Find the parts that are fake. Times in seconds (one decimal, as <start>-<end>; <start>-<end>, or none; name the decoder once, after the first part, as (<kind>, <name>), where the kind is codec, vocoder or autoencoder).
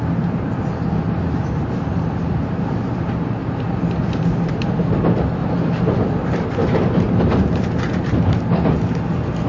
0.0-3.4 (vocoder, BigVGAN v2); 4.5-5.4; 6.0-6.6; 7.3-9.5